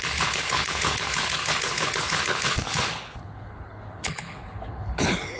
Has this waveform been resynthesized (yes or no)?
yes